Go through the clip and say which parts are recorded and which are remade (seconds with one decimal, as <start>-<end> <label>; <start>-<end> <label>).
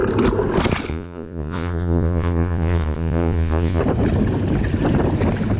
0.0-0.9 recorded; 0.9-3.8 remade; 3.8-5.6 recorded